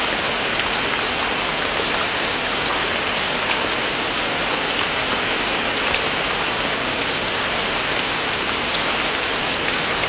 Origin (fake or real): real